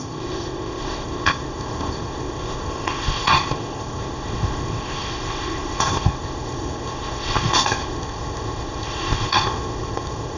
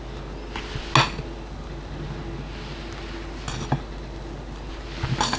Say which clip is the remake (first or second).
first